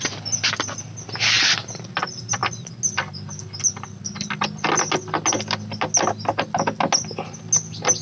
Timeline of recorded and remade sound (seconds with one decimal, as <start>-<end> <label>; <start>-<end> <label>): 0.0-8.0 recorded